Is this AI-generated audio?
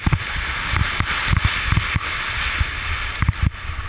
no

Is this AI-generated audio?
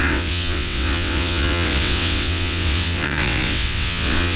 yes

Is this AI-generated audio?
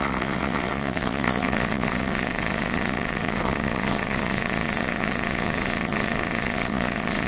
yes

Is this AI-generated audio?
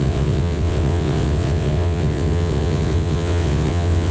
yes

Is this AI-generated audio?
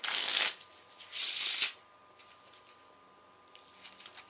no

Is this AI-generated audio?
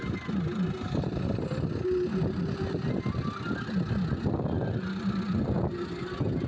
no